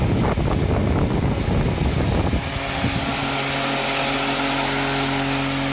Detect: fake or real real